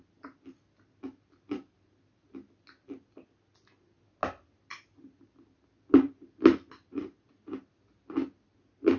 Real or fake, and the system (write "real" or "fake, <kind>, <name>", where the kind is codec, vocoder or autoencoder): real